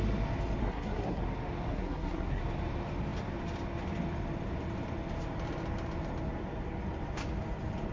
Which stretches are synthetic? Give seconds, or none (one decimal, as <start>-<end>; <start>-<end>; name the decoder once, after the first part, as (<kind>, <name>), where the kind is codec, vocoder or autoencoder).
0.6-1.2 (codec, SNAC); 1.7-2.4